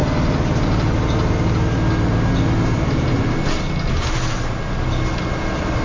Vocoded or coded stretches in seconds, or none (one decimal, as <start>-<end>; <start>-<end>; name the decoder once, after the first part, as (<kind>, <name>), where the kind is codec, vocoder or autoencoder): none